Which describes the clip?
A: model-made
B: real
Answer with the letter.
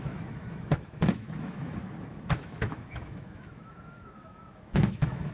A